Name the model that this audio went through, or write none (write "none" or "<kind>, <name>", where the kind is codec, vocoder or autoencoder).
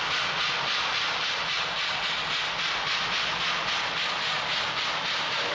none